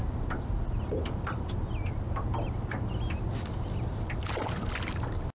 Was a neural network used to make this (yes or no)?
no